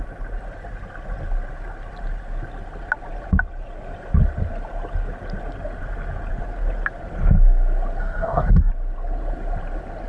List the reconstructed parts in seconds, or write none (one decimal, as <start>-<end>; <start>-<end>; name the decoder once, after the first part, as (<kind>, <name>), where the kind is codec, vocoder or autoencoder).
8.0-8.7 (codec, SNAC)